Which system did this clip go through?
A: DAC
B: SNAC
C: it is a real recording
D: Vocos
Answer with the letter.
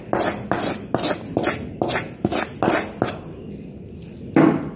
C